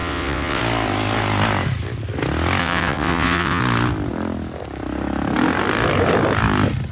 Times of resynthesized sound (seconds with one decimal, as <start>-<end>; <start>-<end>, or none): 0.0-0.6; 2.6-3.6